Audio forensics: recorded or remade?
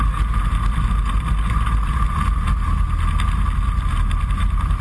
recorded